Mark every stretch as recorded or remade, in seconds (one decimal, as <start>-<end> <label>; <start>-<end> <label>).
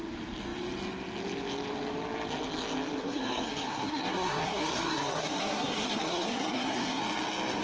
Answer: 0.0-3.0 recorded; 3.0-7.0 remade; 7.0-7.6 recorded